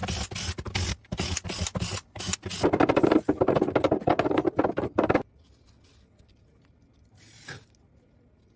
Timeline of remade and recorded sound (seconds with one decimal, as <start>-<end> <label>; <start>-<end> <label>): 0.0-8.6 recorded

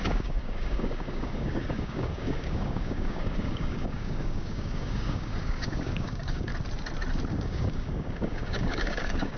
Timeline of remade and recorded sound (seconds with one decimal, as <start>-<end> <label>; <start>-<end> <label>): 0.0-6.5 remade; 6.5-7.3 recorded; 7.3-9.4 remade

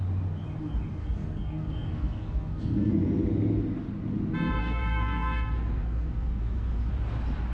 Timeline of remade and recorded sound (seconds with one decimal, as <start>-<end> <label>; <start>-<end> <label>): 0.0-1.0 recorded; 1.0-2.9 remade; 2.9-4.6 recorded; 4.6-6.9 remade; 6.9-7.5 recorded